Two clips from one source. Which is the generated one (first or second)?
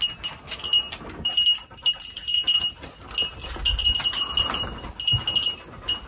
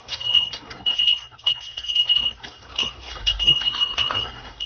second